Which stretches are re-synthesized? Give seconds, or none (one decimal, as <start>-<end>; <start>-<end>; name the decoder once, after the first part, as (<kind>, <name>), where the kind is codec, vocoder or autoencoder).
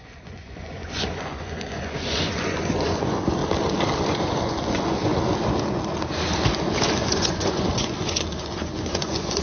0.0-3.4 (vocoder, Vocos); 4.0-5.1; 6.9-9.4